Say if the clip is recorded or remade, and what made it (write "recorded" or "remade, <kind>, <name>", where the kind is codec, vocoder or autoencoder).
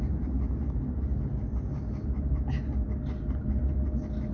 recorded